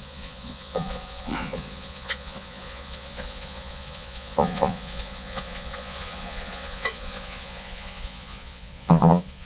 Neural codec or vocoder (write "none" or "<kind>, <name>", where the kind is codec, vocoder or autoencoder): vocoder, Vocos